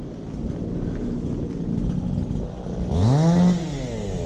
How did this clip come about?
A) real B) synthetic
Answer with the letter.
A